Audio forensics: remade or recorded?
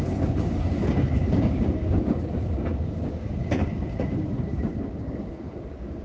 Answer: remade